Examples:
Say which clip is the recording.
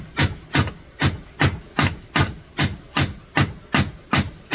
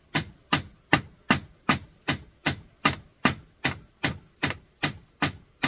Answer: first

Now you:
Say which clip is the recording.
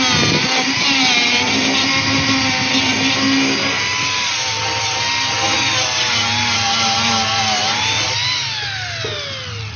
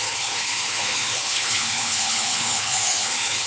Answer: first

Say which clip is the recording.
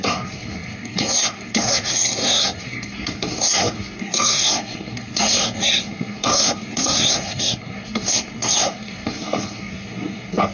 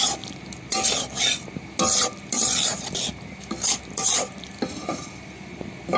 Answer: second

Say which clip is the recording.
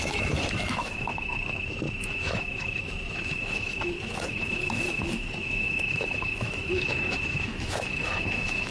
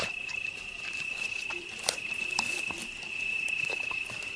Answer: second